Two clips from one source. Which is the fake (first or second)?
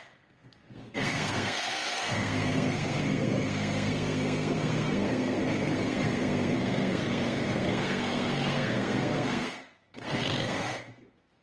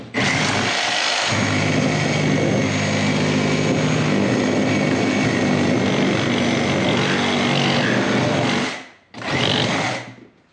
first